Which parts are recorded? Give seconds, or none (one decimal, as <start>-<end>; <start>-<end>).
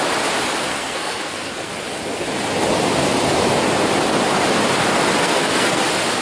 0.0-0.7; 1.7-5.2; 5.8-6.2